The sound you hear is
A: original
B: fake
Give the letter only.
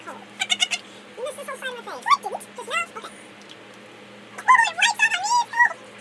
A